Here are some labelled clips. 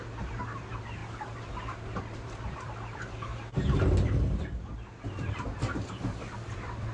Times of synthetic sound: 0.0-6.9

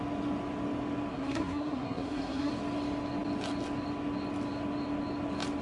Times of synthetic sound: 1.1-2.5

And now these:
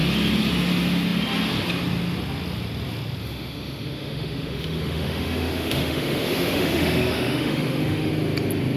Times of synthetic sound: 3.2-8.1

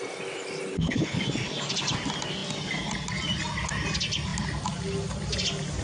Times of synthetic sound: 0.7-1.2

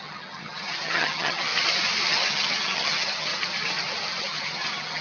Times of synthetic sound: 0.0-1.5; 2.1-3.3; 4.2-5.0

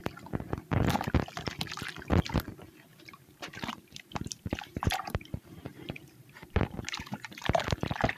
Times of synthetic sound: 2.9-7.6

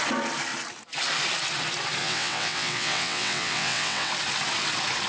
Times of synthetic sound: 2.0-4.1